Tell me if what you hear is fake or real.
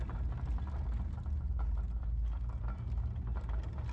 real